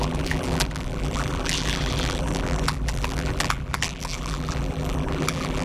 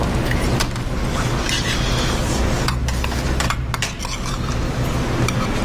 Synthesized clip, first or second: first